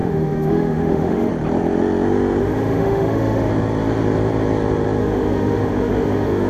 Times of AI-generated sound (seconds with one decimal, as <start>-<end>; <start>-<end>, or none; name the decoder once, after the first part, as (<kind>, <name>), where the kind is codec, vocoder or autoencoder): 0.0-1.3 (autoencoder, DAC-VAE); 2.4-3.5; 5.0-6.5